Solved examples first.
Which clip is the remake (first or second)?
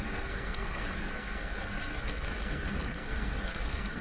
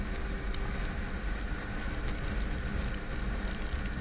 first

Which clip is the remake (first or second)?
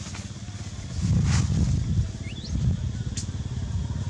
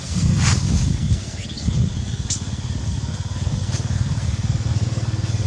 second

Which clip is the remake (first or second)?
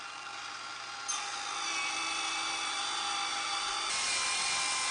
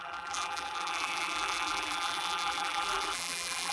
second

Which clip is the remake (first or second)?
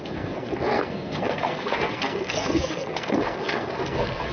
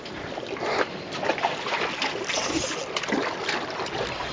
first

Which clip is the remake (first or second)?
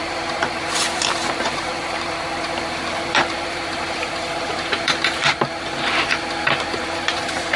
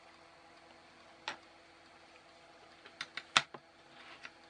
first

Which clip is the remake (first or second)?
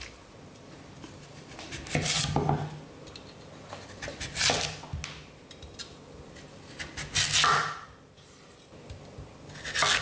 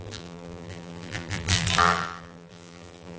second